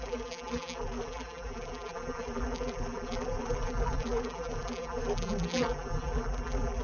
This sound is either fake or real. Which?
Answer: fake